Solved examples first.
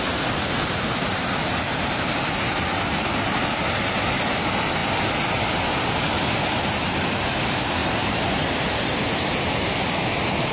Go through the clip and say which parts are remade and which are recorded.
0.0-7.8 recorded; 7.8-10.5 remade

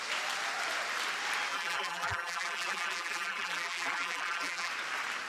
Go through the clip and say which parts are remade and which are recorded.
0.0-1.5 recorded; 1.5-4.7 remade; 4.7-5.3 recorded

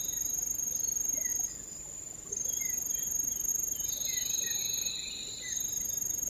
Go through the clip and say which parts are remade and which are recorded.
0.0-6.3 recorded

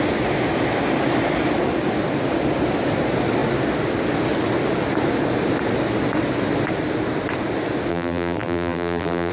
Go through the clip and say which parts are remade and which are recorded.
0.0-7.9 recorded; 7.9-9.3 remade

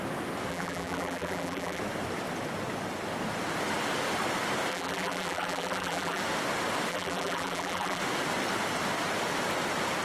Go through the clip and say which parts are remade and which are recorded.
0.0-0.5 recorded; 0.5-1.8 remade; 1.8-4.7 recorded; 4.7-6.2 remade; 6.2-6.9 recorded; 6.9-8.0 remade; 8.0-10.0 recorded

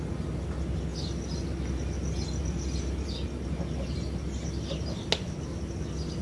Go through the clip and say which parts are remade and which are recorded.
0.0-6.2 recorded